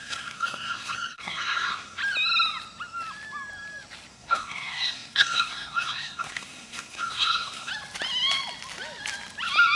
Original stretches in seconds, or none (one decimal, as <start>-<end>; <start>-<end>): 2.0-4.1; 7.7-9.8